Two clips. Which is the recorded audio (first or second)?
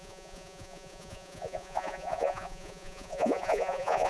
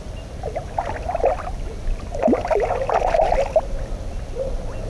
second